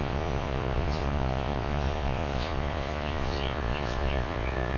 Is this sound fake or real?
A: fake